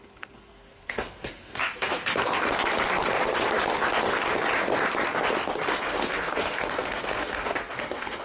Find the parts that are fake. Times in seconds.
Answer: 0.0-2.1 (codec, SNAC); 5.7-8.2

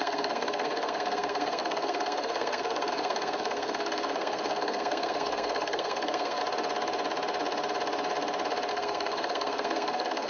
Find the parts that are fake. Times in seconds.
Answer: 0.0-6.4 (codec, SNAC); 8.7-10.3

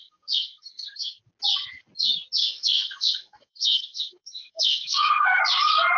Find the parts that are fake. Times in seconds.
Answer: 0.0-1.2 (codec, SNAC); 2.4-5.4

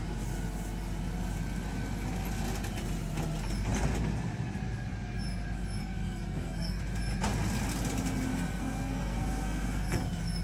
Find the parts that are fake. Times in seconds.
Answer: 5.8-6.8 (codec, SNAC); 8.3-10.0

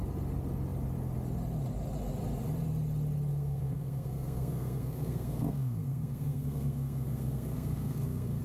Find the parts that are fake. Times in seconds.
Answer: 3.3-8.4 (codec, SNAC)